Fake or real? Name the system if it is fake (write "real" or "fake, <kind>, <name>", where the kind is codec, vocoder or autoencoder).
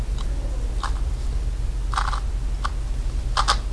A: real